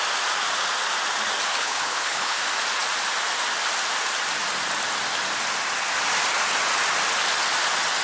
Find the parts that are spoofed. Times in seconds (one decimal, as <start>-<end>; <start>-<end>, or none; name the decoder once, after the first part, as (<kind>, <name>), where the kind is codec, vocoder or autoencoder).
1.5-2.4 (codec, HILCodec)

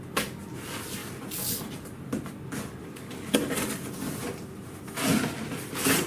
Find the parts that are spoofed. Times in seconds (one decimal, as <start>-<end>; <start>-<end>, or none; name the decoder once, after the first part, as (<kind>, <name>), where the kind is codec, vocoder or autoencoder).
2.8-3.3 (codec, DAC)

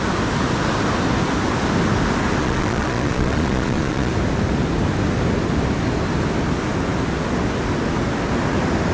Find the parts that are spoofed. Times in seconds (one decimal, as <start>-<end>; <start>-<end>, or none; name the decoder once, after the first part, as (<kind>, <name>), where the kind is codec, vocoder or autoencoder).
2.4-4.1 (vocoder, Vocos)